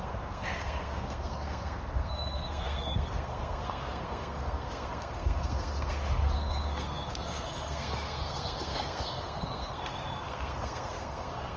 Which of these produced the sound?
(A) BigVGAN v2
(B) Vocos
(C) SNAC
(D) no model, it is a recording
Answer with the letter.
C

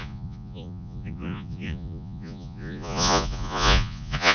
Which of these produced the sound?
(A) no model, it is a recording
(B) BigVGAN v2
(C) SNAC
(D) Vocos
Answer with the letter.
D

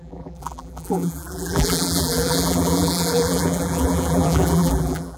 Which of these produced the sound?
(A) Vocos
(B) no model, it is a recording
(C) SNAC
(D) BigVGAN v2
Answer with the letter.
D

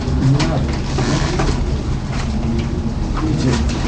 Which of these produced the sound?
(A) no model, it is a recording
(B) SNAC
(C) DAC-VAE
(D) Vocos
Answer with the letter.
A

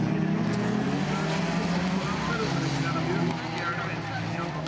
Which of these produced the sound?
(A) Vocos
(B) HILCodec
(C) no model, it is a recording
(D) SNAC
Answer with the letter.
C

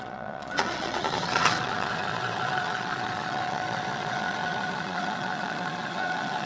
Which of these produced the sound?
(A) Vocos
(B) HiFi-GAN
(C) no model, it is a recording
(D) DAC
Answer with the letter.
A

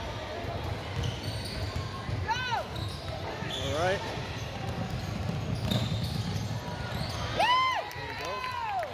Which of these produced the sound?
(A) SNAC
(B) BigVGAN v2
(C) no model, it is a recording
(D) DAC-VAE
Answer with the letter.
C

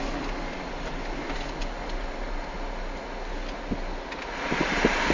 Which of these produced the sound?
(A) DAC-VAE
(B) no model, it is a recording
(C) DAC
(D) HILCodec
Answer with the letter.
B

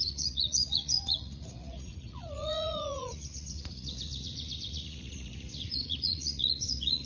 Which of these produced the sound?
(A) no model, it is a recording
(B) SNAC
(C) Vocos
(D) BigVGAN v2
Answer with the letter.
C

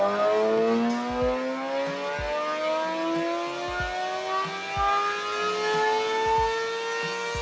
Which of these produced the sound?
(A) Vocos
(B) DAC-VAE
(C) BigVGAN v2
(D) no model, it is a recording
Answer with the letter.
D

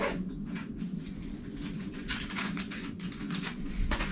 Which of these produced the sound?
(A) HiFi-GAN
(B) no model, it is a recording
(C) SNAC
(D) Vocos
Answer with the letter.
D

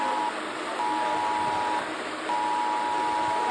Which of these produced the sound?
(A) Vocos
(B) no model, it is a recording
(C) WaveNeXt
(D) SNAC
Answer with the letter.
B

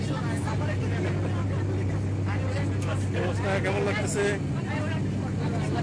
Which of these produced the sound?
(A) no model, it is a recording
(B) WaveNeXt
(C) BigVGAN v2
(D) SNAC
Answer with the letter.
A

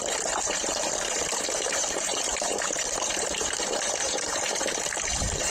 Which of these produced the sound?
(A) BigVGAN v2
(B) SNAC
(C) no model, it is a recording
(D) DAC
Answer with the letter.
A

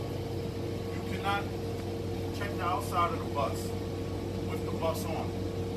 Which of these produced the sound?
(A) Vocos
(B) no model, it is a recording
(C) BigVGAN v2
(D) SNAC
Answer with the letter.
B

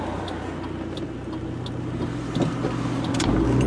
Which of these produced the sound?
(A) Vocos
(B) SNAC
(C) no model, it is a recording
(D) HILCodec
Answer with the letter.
C